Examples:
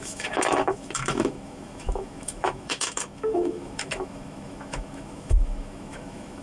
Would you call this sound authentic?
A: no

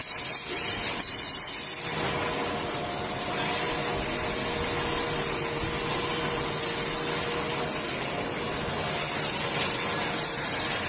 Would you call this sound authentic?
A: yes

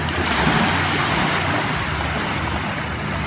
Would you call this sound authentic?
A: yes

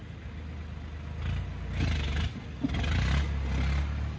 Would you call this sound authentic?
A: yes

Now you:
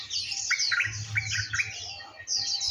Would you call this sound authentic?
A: yes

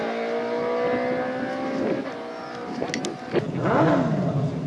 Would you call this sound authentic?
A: yes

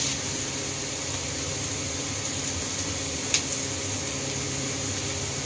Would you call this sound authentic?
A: yes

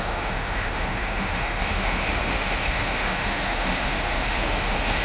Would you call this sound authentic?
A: no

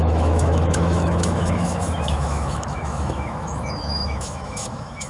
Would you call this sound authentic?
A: no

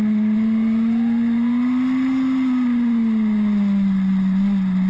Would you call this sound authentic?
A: yes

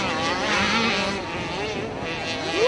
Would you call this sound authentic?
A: yes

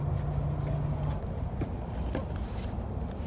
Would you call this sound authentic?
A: yes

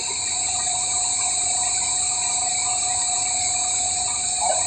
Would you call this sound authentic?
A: yes